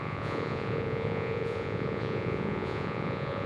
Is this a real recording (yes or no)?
no